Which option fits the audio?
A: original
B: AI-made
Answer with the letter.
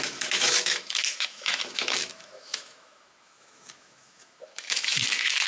B